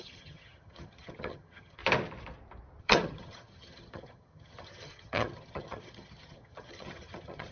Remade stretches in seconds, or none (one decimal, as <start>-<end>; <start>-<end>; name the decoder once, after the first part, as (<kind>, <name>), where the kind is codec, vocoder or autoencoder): 0.0-1.8 (vocoder, HiFi-GAN); 2.8-7.5

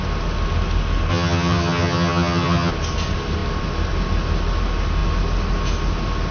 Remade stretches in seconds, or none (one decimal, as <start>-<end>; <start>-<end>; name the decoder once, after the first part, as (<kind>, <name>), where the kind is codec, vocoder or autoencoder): 1.1-2.7 (vocoder, HiFi-GAN)

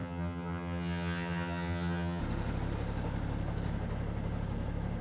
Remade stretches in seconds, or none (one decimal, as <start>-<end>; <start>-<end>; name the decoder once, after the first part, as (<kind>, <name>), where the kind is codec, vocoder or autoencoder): 0.0-2.2 (vocoder, HiFi-GAN)

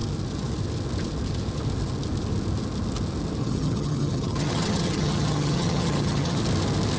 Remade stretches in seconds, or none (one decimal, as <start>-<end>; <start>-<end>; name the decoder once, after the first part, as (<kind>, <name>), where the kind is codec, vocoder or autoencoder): 3.4-6.4 (vocoder, HiFi-GAN)

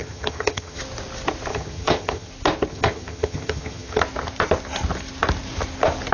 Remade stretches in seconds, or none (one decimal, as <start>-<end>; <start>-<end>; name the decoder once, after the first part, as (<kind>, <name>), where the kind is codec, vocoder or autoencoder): 0.0-0.8 (vocoder, HiFi-GAN); 1.5-2.3; 2.7-4.0

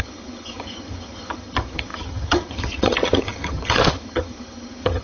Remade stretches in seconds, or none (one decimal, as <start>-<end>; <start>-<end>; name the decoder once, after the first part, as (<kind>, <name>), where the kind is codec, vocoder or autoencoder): 0.0-5.0 (vocoder, HiFi-GAN)

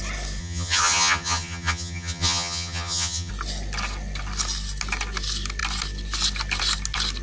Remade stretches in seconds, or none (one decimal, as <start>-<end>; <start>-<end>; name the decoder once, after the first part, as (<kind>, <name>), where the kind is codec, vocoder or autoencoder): 0.4-3.3 (vocoder, HiFi-GAN)